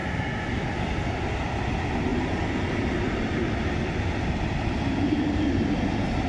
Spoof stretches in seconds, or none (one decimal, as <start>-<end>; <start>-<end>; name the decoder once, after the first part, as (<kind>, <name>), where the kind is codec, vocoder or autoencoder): 0.0-0.6 (vocoder, BigVGAN v2); 2.1-5.5